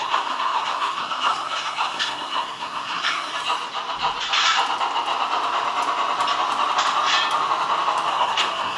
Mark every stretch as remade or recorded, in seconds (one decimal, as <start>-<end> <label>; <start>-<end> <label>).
0.0-3.3 remade; 3.3-8.1 recorded; 8.1-8.8 remade